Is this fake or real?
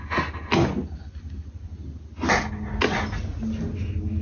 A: real